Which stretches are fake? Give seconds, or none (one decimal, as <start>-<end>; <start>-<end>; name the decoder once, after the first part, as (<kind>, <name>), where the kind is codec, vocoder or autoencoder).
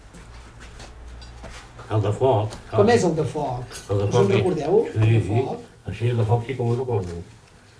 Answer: 5.8-7.0 (codec, SNAC)